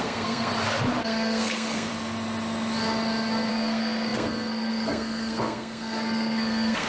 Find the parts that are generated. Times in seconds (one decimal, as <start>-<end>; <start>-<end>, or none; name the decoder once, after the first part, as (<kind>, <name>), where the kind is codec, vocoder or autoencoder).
0.0-0.5 (codec, SNAC); 1.0-1.9; 3.5-6.9